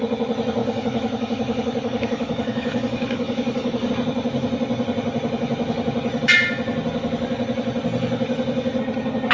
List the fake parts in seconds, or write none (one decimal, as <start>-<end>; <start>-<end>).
0.6-3.9